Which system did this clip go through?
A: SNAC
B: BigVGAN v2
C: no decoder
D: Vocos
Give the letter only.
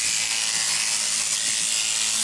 C